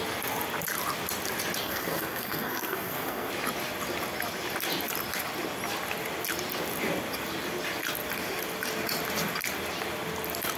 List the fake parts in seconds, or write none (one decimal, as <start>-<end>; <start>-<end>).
1.6-3.3